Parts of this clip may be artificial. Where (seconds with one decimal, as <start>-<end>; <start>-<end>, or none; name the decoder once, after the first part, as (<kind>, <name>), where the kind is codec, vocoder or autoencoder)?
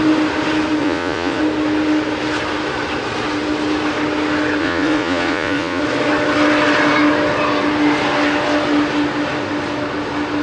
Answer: 0.8-1.4 (vocoder, Vocos); 4.6-5.8